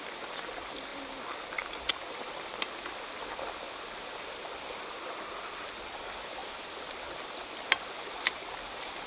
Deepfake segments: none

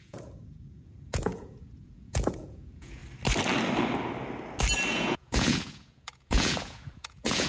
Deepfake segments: 0.0-3.0 (vocoder, Vocos); 4.9-7.5

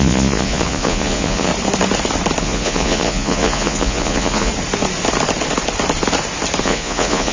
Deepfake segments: 0.0-1.5 (vocoder, Vocos); 2.4-4.5; 6.6-7.3

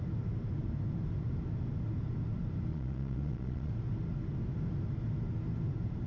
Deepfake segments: 2.7-3.7 (vocoder, Vocos)

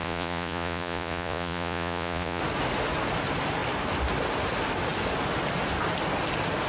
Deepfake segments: 0.0-2.4 (vocoder, Vocos)